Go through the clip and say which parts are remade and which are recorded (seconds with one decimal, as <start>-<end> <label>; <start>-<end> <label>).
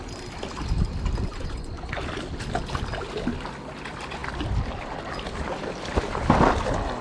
0.0-1.3 recorded; 1.3-1.9 remade; 1.9-7.0 recorded